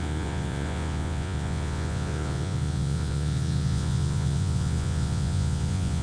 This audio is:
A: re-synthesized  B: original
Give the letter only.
A